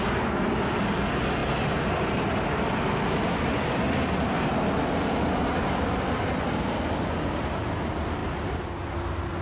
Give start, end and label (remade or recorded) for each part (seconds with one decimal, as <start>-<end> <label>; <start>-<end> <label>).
0.0-9.4 recorded